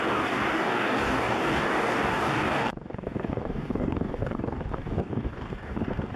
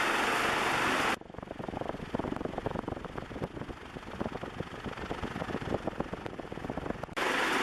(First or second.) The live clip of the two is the second